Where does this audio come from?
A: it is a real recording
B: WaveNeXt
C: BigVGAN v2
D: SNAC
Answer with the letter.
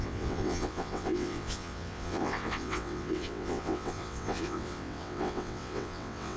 B